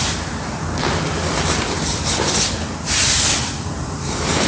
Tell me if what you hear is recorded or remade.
recorded